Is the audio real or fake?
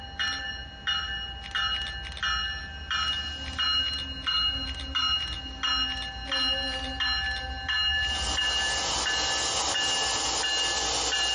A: real